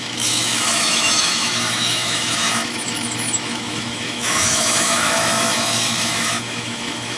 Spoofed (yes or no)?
yes